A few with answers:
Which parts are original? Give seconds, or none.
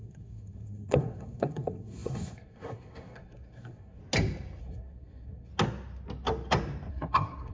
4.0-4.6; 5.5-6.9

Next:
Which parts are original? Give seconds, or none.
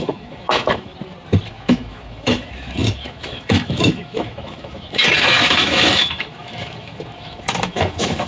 0.9-1.5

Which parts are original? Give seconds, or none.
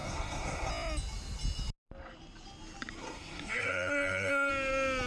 0.7-3.0; 4.5-5.1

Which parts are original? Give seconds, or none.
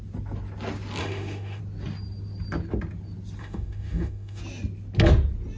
0.0-1.0; 1.6-3.4; 4.4-5.6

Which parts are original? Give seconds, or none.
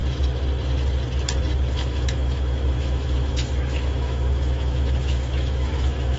0.0-1.7